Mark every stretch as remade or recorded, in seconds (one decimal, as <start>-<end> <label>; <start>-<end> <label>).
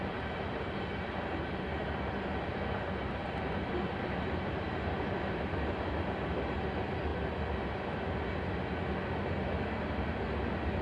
0.0-10.8 recorded